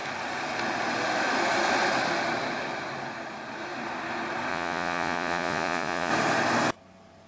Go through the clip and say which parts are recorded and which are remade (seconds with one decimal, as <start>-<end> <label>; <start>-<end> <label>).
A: 0.0-4.5 recorded; 4.5-6.1 remade; 6.1-7.3 recorded